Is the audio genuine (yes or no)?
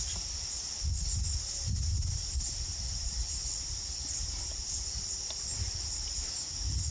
yes